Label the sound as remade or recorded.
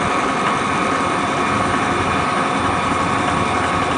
recorded